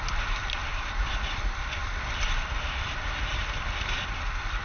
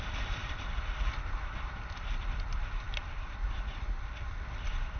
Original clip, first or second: second